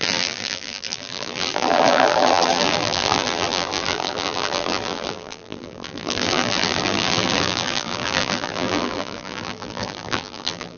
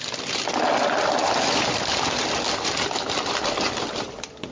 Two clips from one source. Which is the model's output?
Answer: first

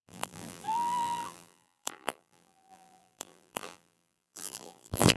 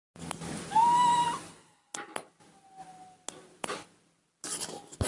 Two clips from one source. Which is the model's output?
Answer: first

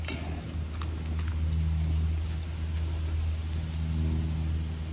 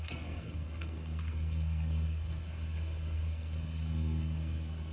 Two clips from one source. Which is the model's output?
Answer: second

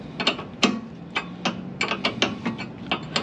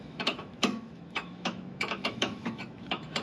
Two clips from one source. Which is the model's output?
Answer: second